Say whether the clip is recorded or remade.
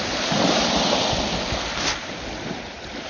recorded